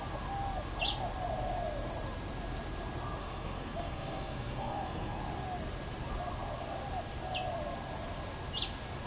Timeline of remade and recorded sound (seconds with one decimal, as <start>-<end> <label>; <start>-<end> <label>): 0.0-3.2 recorded; 3.2-5.1 remade; 5.1-9.1 recorded